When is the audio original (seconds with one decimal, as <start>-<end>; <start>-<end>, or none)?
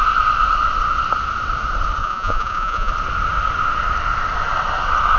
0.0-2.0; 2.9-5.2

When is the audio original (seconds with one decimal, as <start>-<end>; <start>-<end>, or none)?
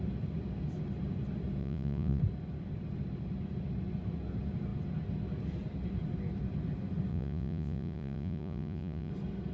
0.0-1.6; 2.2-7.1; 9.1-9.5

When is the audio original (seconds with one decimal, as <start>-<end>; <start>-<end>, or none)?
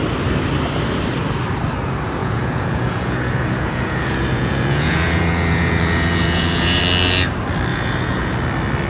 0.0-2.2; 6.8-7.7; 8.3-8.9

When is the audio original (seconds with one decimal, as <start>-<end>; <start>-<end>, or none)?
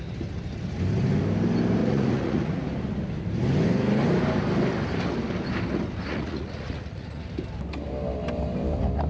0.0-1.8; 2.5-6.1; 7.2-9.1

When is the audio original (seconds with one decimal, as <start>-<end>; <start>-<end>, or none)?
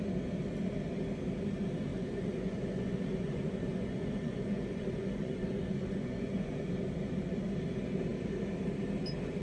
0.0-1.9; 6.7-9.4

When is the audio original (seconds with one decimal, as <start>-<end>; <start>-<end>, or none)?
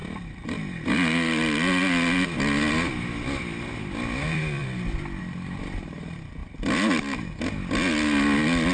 0.0-8.7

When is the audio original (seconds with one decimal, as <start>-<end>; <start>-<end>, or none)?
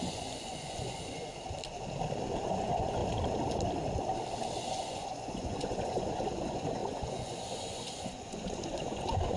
1.3-2.4; 3.0-4.6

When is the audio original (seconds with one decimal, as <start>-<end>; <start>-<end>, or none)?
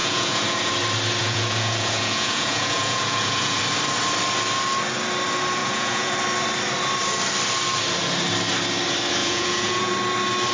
0.7-1.2; 3.6-5.6; 6.1-9.2; 9.9-10.5